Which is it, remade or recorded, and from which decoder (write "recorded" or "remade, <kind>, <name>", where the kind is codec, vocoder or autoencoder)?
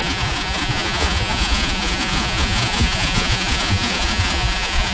remade, vocoder, Vocos